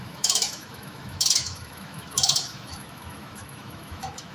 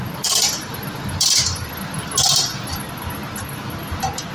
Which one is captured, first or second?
second